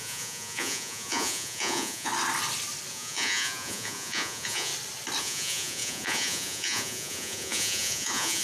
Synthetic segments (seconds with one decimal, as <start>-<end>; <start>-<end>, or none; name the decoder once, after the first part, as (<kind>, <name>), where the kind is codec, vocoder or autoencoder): 0.0-2.1 (vocoder, Vocos); 2.9-4.7; 5.2-8.4